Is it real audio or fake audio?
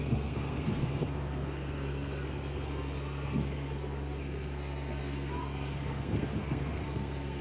fake